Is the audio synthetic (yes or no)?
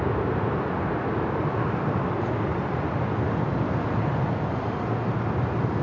no